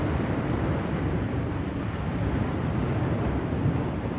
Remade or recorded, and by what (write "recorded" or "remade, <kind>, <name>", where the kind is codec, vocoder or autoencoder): recorded